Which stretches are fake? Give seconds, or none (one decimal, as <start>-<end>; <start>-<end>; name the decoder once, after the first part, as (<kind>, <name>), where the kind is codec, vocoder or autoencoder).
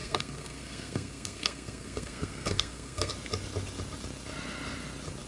0.0-3.1 (codec, SNAC)